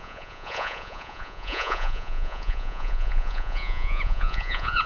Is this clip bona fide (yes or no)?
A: no